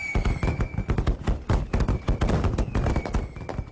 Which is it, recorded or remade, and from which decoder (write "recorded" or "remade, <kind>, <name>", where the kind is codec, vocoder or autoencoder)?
remade, vocoder, BigVGAN v2